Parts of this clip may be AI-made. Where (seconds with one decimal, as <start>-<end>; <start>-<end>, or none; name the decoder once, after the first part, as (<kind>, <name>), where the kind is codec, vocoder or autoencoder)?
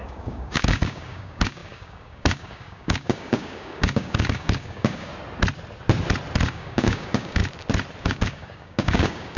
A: 0.0-5.1 (codec, DAC); 6.5-7.4; 8.0-9.4